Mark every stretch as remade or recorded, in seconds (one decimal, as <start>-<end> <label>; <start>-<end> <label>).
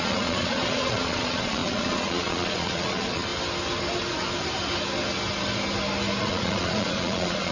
0.0-3.3 remade; 3.3-6.2 recorded; 6.2-7.5 remade